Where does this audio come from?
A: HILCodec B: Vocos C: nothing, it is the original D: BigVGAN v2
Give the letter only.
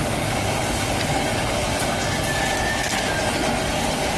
C